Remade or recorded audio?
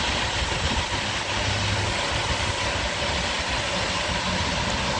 recorded